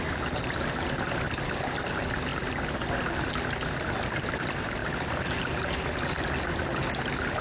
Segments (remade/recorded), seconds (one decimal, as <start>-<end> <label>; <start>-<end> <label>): 0.0-7.4 recorded

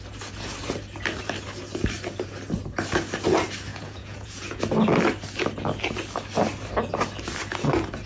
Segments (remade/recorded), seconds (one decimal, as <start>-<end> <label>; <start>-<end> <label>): 0.0-3.7 recorded; 3.7-4.6 remade; 4.6-8.1 recorded

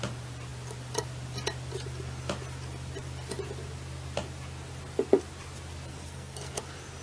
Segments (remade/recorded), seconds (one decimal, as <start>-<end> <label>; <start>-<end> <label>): 0.0-5.9 recorded; 5.9-6.6 remade; 6.6-7.0 recorded

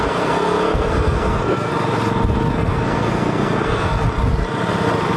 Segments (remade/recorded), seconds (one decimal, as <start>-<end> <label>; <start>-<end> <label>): 0.0-1.7 remade; 1.7-2.5 recorded; 2.5-3.9 remade; 3.9-5.2 recorded

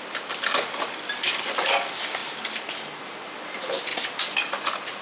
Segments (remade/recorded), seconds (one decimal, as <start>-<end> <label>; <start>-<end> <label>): 0.0-5.0 recorded

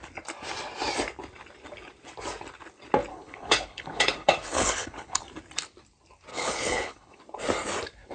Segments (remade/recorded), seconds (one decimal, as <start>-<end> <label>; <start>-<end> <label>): 0.0-3.1 recorded; 3.1-5.2 remade; 5.2-6.3 recorded; 6.3-7.2 remade; 7.2-8.1 recorded

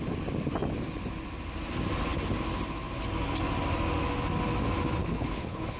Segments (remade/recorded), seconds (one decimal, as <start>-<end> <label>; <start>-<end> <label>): 0.0-5.0 recorded; 5.0-5.8 remade

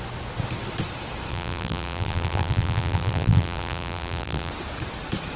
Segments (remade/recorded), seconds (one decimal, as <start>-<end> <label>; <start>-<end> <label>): 0.0-1.3 recorded; 1.3-4.5 remade; 4.5-5.4 recorded